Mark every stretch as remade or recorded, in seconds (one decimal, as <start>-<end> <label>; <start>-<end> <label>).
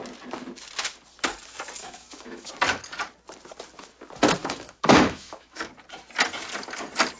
0.0-1.8 recorded; 1.8-2.5 remade; 2.5-4.4 recorded; 4.4-5.7 remade; 5.7-7.2 recorded